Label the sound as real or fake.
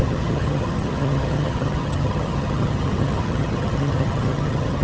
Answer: fake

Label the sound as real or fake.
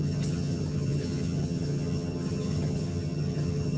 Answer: fake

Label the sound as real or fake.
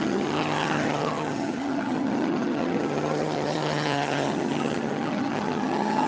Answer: fake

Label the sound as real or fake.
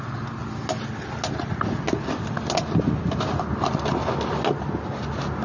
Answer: real